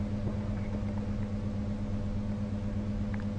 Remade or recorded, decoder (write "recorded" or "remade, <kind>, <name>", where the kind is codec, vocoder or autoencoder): recorded